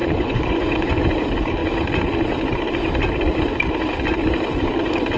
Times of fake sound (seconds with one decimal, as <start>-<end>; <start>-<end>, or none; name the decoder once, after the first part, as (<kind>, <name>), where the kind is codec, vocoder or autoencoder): 0.0-0.9 (vocoder, Vocos)